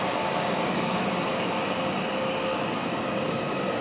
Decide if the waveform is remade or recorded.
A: remade